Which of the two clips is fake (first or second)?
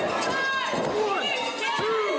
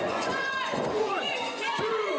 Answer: second